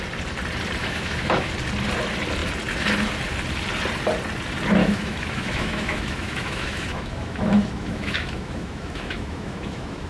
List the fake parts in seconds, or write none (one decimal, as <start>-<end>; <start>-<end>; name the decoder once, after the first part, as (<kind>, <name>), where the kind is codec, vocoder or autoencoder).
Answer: 0.8-1.5 (autoencoder, DAC-VAE); 4.8-10.1